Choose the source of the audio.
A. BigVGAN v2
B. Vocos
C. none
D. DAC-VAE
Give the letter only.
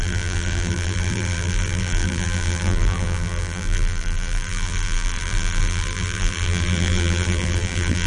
A